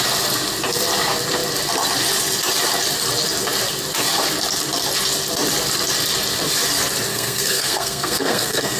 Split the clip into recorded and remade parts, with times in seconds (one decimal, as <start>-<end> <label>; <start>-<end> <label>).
0.0-7.1 recorded; 7.1-8.8 remade